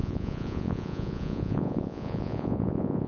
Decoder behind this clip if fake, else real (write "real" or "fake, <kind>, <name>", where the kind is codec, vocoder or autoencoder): fake, vocoder, Vocos